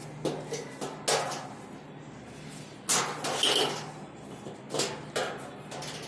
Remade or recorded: recorded